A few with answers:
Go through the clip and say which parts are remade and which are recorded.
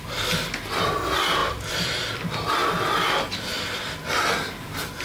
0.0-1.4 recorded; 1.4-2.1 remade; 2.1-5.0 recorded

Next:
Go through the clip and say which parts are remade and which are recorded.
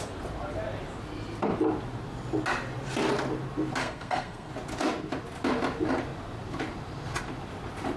0.0-3.8 recorded; 3.8-4.5 remade; 4.5-8.0 recorded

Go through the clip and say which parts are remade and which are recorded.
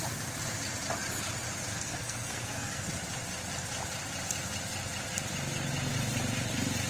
0.0-1.7 recorded; 1.7-2.8 remade; 2.8-6.9 recorded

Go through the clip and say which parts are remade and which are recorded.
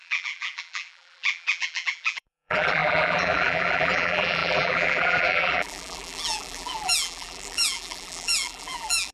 0.0-9.1 remade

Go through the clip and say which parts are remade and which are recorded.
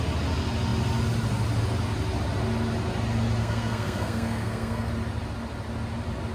0.0-3.4 recorded; 3.4-4.9 remade; 4.9-6.3 recorded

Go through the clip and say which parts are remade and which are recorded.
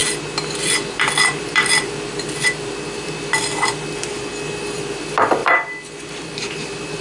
0.0-5.4 remade; 5.4-6.1 recorded; 6.1-7.0 remade